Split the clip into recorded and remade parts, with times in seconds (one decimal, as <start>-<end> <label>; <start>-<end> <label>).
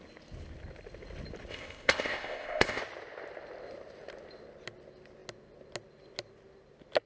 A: 0.0-1.5 recorded; 1.5-2.8 remade; 2.8-7.1 recorded